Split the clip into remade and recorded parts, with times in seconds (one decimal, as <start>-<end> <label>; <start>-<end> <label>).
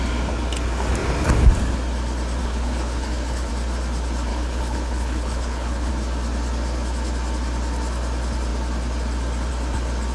0.0-2.4 recorded; 2.4-3.5 remade; 3.5-4.3 recorded; 4.3-5.9 remade; 5.9-10.1 recorded